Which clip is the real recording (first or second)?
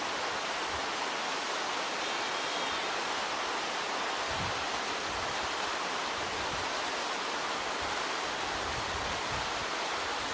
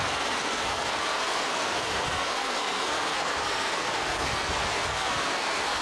first